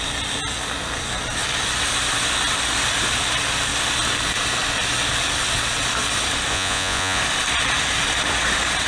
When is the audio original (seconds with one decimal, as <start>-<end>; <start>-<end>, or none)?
0.0-6.5; 7.2-8.9